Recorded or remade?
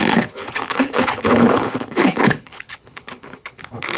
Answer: remade